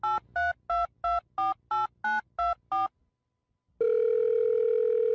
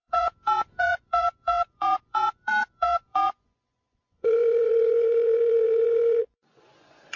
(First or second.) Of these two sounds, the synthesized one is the second